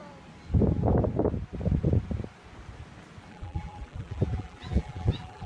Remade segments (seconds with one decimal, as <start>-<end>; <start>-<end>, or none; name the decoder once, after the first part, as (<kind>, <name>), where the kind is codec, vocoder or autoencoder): 3.3-5.5 (vocoder, BigVGAN v2)